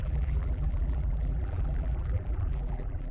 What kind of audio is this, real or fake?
fake